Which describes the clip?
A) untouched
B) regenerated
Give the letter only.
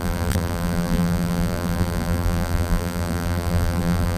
B